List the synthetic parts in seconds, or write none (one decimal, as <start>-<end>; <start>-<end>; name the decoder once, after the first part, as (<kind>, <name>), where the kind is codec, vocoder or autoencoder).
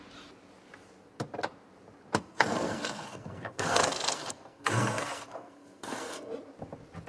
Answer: 2.2-6.3 (codec, SNAC)